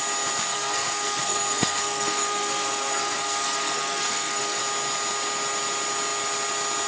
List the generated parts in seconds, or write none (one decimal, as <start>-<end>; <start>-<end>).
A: 0.5-4.6